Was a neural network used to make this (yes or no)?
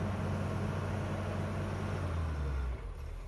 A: no